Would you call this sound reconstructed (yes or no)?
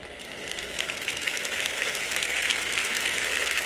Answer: yes